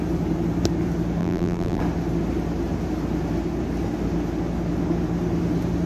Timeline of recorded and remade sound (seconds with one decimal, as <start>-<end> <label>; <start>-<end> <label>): 0.0-1.2 recorded; 1.2-1.8 remade; 1.8-5.9 recorded

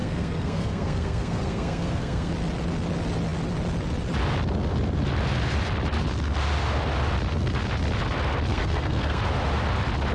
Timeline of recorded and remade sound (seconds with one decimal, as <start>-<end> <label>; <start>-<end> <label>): 0.0-2.3 remade; 2.3-8.5 recorded; 8.5-9.2 remade; 9.2-10.1 recorded

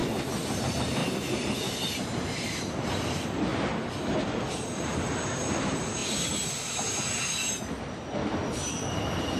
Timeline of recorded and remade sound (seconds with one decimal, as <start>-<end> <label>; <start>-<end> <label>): 0.0-0.6 recorded; 0.6-1.0 remade; 1.0-2.3 recorded; 2.3-3.5 remade; 3.5-4.5 recorded; 4.5-6.0 remade; 6.0-8.7 recorded; 8.7-9.4 remade

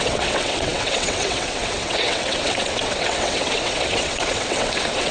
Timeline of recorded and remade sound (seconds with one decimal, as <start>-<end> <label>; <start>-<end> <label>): 0.0-5.1 remade